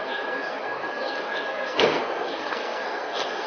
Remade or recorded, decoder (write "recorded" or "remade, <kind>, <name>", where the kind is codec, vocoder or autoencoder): remade, codec, SNAC